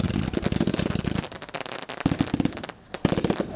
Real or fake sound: real